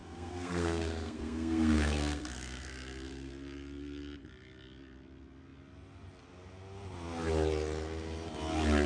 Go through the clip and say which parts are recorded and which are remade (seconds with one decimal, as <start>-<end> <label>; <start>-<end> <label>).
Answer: 0.0-3.3 remade; 3.3-8.9 recorded